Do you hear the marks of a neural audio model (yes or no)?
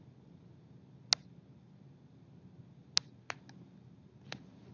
no